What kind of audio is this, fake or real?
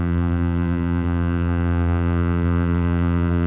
fake